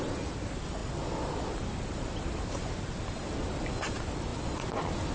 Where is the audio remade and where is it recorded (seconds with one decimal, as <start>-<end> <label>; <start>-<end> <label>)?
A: 0.0-5.1 recorded